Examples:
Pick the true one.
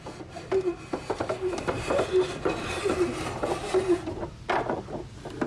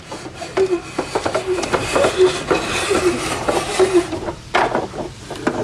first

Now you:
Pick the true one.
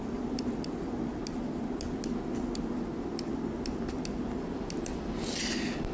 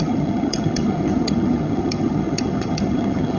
first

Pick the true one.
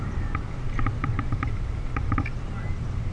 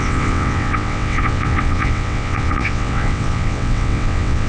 first